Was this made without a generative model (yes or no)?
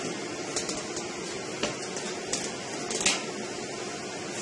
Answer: yes